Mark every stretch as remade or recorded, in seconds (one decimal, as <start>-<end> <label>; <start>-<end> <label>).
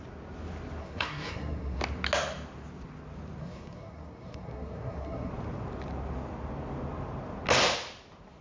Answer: 0.0-0.8 recorded; 0.8-1.8 remade; 1.8-3.4 recorded; 3.4-5.3 remade; 5.3-8.4 recorded